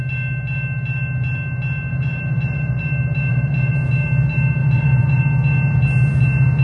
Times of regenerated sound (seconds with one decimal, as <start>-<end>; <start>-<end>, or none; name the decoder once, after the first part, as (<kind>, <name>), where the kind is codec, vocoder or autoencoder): 1.9-2.8 (vocoder, Vocos); 3.3-3.9; 4.6-5.2